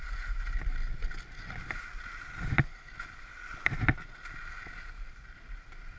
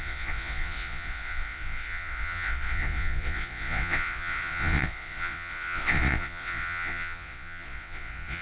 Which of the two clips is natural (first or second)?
first